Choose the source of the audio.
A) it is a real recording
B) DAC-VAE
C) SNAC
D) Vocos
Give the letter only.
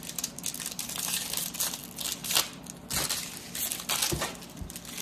A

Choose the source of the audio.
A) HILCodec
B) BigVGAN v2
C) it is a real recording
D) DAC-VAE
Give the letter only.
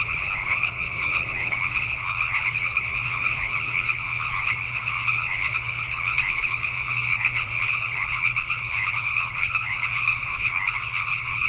A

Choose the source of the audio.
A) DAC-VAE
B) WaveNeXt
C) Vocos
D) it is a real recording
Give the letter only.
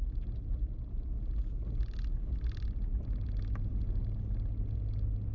D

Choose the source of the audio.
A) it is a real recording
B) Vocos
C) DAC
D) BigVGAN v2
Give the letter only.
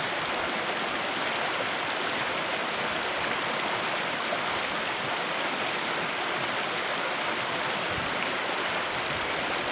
A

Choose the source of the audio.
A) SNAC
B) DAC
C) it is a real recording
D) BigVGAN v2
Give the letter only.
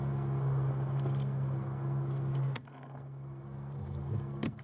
A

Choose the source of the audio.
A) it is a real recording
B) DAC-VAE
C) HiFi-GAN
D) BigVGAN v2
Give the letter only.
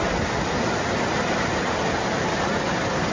A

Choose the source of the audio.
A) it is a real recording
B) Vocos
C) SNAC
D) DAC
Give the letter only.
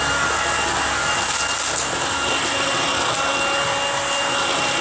A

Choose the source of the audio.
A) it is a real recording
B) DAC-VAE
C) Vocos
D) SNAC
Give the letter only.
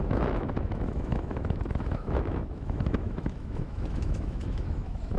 B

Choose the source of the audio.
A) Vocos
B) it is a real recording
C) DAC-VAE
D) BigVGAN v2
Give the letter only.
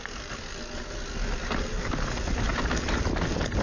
B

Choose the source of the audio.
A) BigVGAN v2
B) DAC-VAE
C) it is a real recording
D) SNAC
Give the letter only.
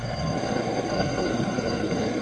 D